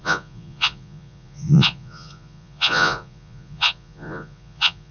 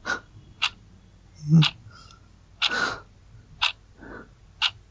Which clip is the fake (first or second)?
first